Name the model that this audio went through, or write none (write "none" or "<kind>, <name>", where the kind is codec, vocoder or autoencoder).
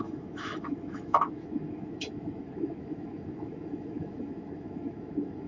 autoencoder, DAC-VAE